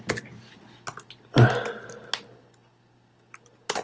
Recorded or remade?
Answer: recorded